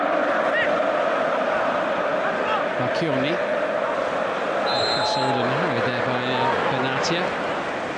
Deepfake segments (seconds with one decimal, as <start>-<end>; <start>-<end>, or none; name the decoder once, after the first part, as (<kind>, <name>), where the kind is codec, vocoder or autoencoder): none